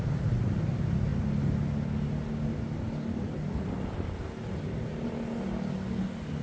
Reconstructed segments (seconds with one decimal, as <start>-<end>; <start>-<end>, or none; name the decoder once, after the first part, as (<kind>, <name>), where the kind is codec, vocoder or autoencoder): none